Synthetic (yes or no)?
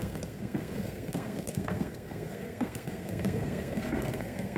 yes